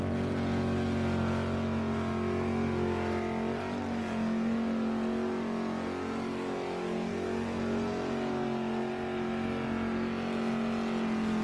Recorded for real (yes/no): yes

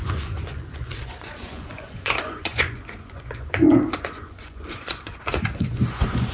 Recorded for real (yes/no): no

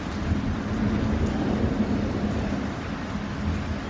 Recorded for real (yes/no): yes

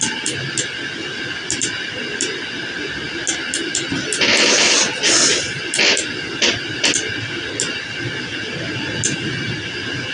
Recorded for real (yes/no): yes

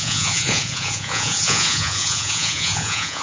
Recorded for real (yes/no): no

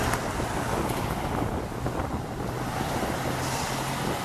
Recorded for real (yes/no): yes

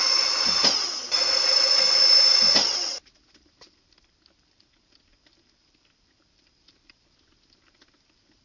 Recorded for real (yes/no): yes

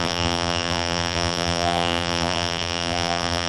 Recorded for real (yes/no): no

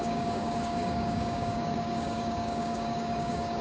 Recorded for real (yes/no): no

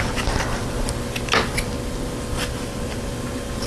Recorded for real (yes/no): yes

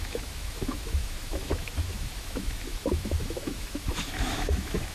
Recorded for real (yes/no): no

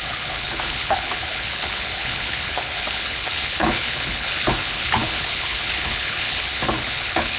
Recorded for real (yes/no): no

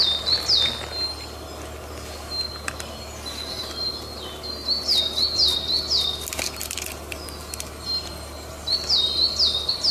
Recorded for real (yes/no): yes